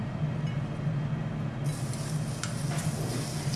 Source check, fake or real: real